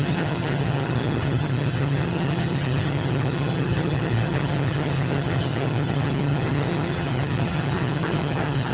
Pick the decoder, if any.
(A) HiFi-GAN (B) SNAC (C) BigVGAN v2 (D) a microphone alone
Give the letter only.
A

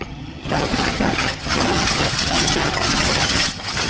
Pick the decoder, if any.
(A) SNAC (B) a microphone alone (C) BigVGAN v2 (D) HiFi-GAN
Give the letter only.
D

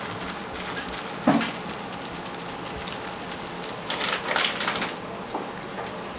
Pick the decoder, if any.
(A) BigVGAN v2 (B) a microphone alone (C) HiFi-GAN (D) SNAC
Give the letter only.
B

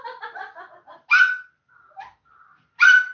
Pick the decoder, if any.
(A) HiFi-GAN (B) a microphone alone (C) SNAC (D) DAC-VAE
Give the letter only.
B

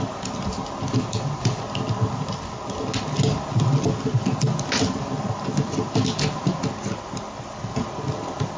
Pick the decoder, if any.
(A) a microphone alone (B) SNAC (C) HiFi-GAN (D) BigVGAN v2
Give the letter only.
A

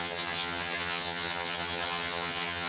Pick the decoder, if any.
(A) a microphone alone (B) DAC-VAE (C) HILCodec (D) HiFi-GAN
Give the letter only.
D